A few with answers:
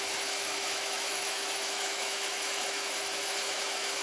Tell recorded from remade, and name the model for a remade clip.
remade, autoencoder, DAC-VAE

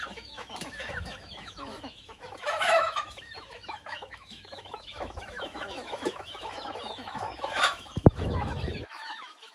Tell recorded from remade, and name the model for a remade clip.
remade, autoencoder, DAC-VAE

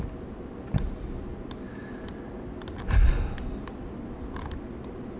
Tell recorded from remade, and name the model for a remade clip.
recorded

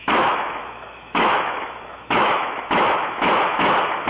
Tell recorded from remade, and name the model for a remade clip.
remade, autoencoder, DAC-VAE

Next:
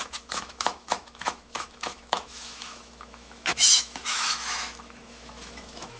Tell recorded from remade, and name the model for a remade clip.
remade, autoencoder, DAC-VAE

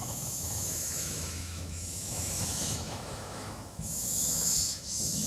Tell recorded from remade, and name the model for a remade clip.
remade, autoencoder, DAC-VAE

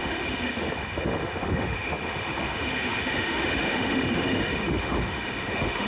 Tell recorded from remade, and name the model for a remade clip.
remade, autoencoder, DAC-VAE